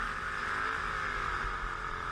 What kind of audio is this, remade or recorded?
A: recorded